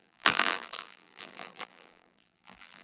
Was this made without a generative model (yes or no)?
no